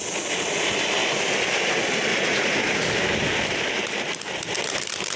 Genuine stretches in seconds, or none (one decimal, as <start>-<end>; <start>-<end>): 0.0-2.1; 2.8-5.2